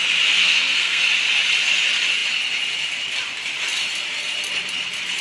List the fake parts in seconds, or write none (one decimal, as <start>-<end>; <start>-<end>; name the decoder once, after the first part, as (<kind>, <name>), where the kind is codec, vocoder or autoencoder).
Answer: 0.4-1.0 (codec, SNAC)